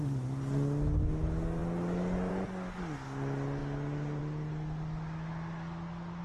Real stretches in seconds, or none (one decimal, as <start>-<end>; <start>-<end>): 0.0-6.2